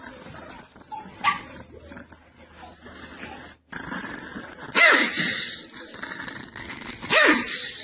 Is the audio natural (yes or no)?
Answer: yes